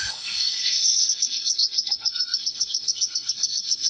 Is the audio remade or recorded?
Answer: remade